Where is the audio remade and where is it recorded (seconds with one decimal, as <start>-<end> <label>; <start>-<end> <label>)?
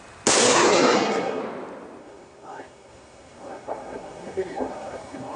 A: 0.0-0.4 recorded; 0.4-1.4 remade; 1.4-2.0 recorded; 2.0-5.4 remade